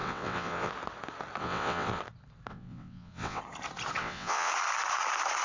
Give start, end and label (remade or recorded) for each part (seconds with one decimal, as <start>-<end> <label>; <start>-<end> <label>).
0.0-0.7 remade; 0.7-1.4 recorded; 1.4-2.0 remade; 2.0-2.5 recorded; 2.5-3.4 remade; 3.4-4.0 recorded; 4.0-4.5 remade; 4.5-5.4 recorded